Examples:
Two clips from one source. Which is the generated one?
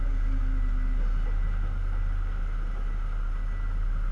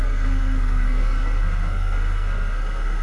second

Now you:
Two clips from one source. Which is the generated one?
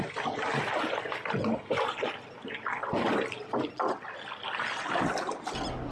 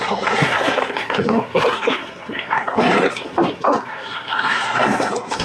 second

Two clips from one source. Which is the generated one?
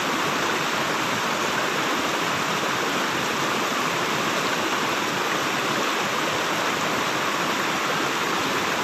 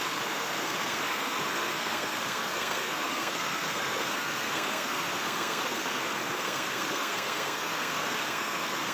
second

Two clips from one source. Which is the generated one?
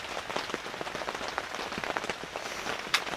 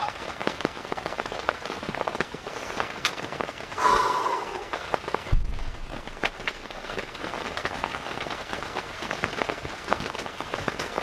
second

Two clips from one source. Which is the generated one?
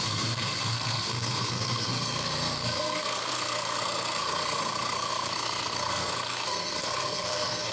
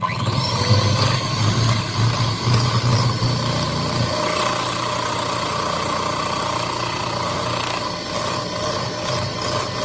first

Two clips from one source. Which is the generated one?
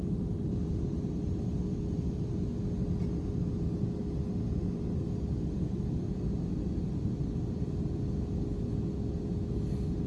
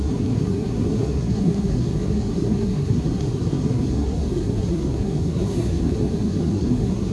second